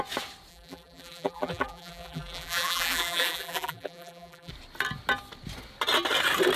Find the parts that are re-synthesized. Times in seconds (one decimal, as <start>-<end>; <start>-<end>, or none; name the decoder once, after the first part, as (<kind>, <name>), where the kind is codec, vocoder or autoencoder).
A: 0.5-4.5 (vocoder, BigVGAN v2)